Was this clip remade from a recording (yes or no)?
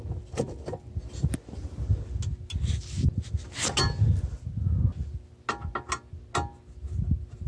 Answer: no